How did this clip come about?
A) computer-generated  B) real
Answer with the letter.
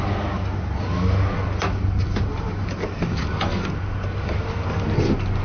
B